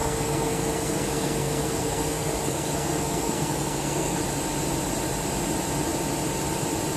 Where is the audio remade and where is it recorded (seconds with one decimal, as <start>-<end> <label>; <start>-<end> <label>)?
0.0-4.2 remade; 4.2-7.0 recorded